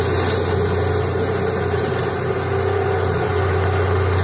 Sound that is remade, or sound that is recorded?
recorded